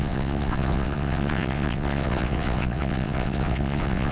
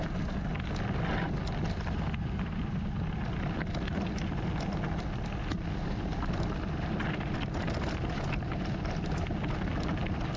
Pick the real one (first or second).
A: second